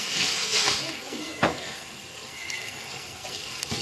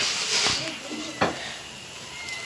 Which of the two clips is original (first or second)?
second